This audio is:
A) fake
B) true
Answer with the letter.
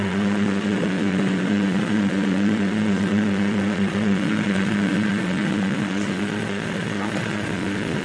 A